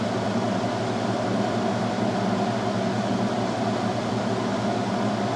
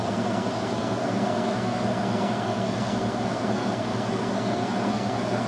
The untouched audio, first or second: first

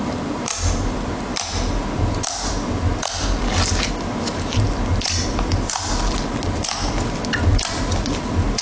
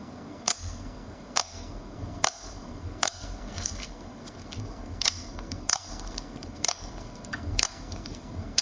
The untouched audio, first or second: first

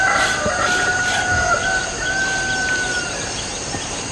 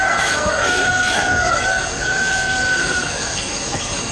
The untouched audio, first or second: first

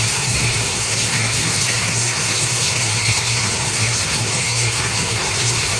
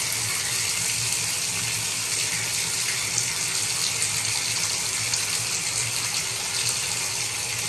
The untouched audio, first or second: second